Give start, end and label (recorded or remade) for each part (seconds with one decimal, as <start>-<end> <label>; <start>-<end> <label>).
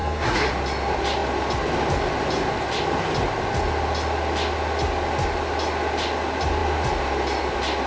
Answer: 0.0-0.5 remade; 0.5-7.9 recorded